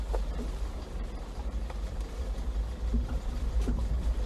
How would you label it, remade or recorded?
remade